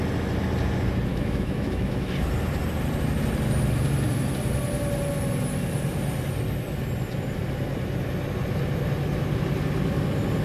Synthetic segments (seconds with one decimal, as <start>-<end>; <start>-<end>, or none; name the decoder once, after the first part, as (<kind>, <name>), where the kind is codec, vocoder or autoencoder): 1.1-2.1 (autoencoder, DAC-VAE)